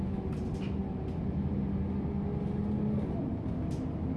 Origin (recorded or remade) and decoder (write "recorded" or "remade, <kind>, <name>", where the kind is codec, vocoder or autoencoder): recorded